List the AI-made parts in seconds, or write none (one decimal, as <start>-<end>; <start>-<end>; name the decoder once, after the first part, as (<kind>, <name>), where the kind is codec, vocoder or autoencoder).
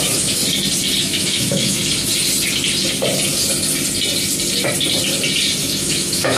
0.0-0.4 (autoencoder, DAC-VAE); 1.0-1.8; 5.6-6.4